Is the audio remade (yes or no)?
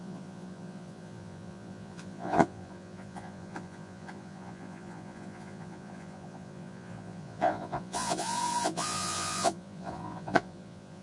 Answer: yes